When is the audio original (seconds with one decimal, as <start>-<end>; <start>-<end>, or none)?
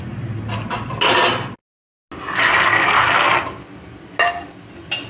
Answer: 0.0-5.1